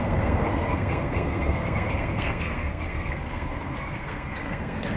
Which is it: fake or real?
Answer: fake